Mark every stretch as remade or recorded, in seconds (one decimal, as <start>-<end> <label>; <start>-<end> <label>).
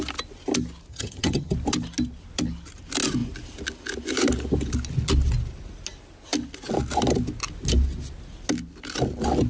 0.0-0.9 recorded; 0.9-1.5 remade; 1.5-9.5 recorded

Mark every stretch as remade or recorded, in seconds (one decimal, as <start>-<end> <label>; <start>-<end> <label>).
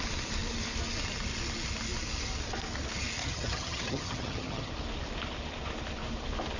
0.0-3.2 recorded; 3.2-4.7 remade; 4.7-6.6 recorded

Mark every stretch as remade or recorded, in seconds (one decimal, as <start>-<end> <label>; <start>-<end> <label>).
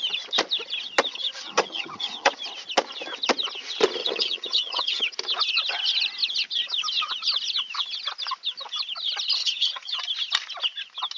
0.0-1.1 recorded; 1.1-2.4 remade; 2.4-4.0 recorded; 4.0-5.0 remade; 5.0-9.4 recorded; 9.4-10.0 remade; 10.0-11.2 recorded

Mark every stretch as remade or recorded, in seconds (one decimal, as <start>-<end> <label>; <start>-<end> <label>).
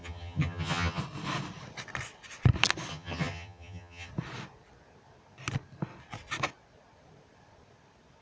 0.0-1.0 remade; 1.0-2.9 recorded; 2.9-4.1 remade; 4.1-8.2 recorded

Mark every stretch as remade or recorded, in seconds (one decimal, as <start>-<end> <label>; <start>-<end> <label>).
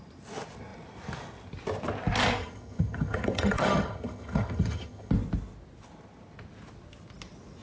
0.0-2.4 recorded; 2.4-5.1 remade; 5.1-7.6 recorded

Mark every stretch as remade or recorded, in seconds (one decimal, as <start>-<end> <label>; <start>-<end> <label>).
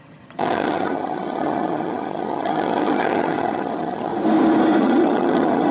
0.0-4.1 remade; 4.1-4.8 recorded; 4.8-5.7 remade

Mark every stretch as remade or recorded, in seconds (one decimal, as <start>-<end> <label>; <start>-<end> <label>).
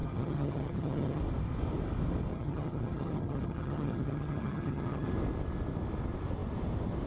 0.0-1.2 remade; 1.2-2.3 recorded; 2.3-5.1 remade; 5.1-7.1 recorded